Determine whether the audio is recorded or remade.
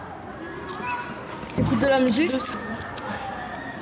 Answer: recorded